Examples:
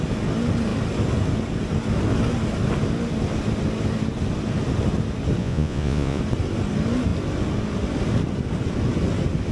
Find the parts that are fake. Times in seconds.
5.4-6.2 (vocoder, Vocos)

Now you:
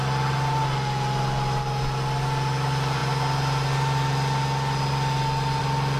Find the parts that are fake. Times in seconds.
none

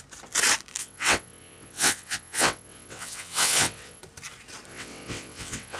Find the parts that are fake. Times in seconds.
0.8-4.0 (vocoder, WaveNeXt); 4.7-5.8

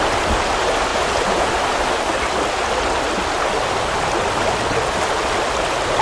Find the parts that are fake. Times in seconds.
0.9-1.5 (vocoder, Vocos)

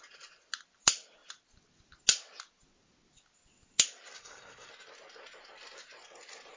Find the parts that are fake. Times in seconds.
4.2-4.7 (codec, SNAC)